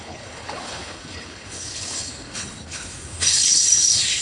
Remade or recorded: remade